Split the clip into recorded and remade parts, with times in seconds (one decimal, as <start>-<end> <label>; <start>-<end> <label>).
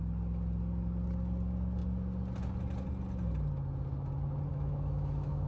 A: 0.0-4.5 recorded; 4.5-5.5 remade